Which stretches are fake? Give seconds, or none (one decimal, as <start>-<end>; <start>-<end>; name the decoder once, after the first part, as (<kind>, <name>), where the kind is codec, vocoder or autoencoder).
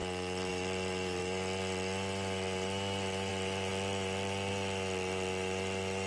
0.5-1.2 (vocoder, BigVGAN v2); 3.3-6.1